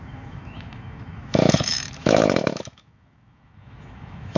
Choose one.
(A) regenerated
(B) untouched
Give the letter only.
A